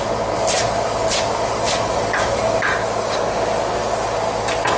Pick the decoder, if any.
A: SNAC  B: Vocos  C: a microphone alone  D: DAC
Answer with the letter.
C